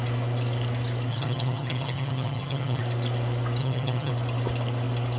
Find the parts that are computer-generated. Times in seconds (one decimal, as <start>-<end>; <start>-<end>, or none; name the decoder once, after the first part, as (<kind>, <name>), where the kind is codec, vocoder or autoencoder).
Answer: 1.1-2.8 (vocoder, HiFi-GAN); 3.6-4.1